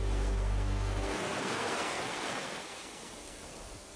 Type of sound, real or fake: fake